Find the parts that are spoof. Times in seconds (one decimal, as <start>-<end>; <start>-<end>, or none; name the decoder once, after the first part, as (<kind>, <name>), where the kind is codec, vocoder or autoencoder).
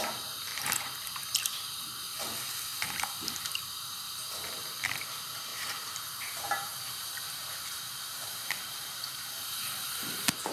0.0-0.5 (vocoder, BigVGAN v2); 4.5-10.5